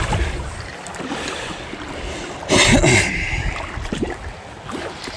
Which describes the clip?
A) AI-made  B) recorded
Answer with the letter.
B